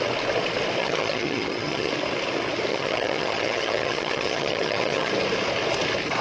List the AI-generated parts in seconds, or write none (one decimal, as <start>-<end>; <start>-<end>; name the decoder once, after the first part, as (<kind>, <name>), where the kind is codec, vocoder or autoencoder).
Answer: 0.8-1.9 (vocoder, HiFi-GAN); 2.7-5.1

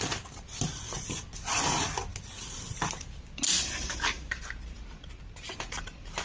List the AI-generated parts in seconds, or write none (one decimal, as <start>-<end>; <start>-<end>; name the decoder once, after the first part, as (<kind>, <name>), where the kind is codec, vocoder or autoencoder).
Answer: none

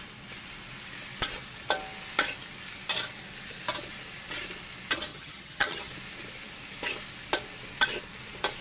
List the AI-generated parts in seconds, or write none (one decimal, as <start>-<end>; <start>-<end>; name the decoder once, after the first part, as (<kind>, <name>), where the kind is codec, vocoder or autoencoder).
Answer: 5.1-5.9 (vocoder, HiFi-GAN)

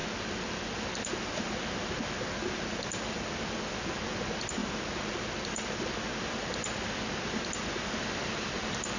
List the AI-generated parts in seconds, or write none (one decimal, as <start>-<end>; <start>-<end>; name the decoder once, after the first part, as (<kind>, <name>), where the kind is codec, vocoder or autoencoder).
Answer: none